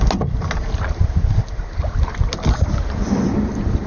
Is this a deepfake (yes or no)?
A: no